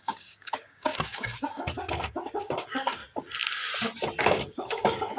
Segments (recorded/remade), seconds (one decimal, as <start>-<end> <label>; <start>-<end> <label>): 0.0-3.0 remade; 3.0-4.2 recorded; 4.2-5.2 remade